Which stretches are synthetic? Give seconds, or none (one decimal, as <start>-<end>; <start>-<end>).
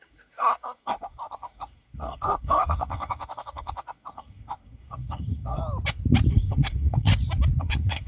0.0-5.6; 6.3-7.1; 7.6-8.1